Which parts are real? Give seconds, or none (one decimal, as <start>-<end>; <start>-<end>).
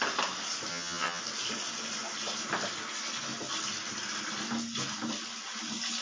0.0-0.7; 1.2-6.0